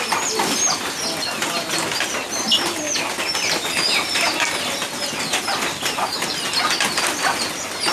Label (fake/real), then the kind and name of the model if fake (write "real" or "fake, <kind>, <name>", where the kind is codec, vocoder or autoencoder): real